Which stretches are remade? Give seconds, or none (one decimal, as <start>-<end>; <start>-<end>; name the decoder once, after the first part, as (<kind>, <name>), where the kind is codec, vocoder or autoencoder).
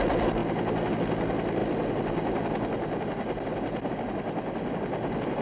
none